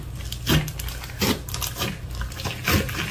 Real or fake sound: real